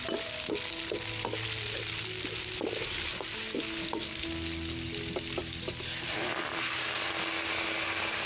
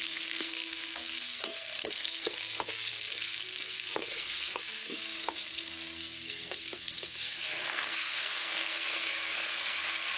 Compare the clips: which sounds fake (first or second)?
second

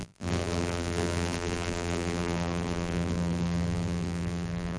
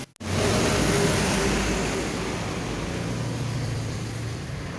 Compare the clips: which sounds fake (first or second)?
first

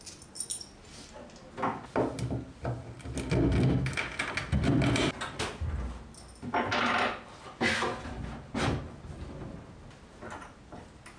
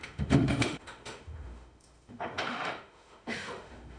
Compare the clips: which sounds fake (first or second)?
second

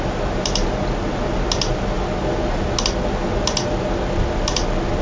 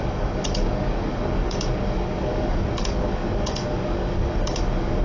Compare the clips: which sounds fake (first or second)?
second